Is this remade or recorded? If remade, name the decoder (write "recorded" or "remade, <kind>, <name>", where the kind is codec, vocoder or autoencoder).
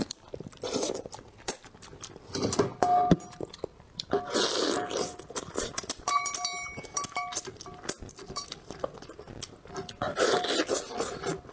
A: recorded